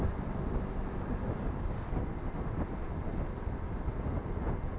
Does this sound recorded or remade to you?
recorded